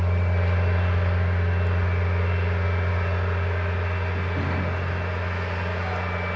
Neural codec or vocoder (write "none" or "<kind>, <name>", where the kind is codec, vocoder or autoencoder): none